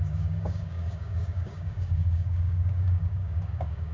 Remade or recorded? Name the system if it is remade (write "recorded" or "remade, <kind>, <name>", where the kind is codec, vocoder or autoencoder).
remade, codec, DAC